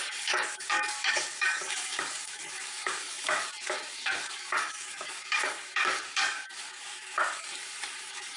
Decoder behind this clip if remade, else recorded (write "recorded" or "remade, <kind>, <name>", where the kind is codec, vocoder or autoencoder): remade, codec, DAC